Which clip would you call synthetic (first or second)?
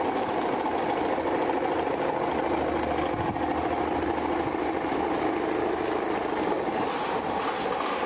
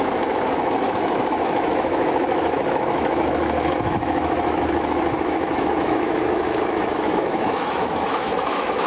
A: second